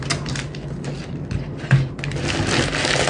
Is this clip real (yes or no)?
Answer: yes